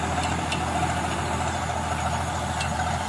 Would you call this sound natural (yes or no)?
yes